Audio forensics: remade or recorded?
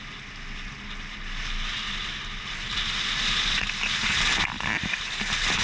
recorded